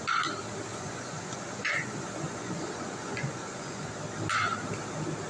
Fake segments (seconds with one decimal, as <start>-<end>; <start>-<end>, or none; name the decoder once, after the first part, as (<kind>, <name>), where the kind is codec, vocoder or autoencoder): 0.7-3.9 (vocoder, Vocos)